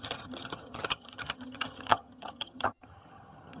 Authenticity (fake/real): fake